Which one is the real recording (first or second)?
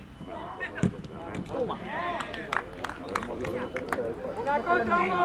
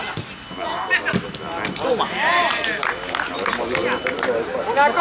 second